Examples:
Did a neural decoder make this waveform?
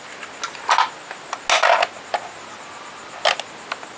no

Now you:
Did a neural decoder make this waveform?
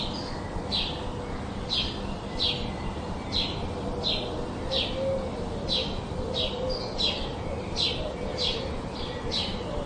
no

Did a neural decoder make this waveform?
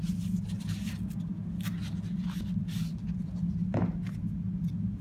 no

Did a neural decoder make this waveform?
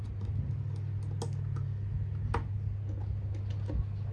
no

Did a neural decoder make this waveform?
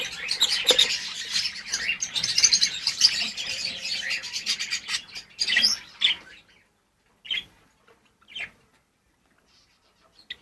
yes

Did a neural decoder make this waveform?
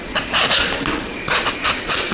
yes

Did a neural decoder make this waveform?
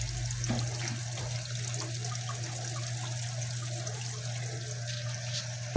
no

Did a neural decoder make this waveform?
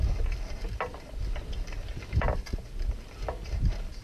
no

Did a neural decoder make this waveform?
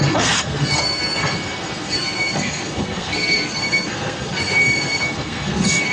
yes